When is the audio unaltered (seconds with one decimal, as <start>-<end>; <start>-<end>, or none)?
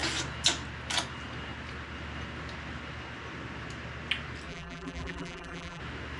0.0-4.5; 5.8-6.2